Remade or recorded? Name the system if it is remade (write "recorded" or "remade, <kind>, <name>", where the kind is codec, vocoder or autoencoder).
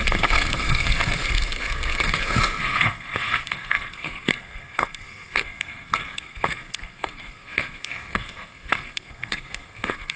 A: remade, codec, SNAC